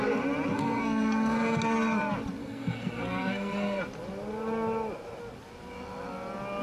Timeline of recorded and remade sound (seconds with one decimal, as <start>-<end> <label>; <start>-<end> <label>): 0.0-0.5 recorded; 0.5-1.6 remade; 1.6-2.4 recorded; 2.4-3.8 remade; 3.8-6.6 recorded